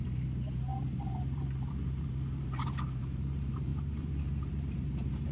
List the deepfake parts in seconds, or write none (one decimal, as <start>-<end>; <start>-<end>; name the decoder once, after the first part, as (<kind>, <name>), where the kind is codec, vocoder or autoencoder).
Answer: 0.0-5.3 (vocoder, BigVGAN v2)